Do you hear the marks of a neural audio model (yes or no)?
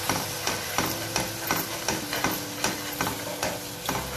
no